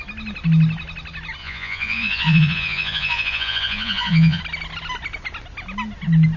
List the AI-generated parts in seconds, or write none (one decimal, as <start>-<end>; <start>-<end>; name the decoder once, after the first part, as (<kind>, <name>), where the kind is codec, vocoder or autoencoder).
1.4-4.4 (vocoder, Vocos)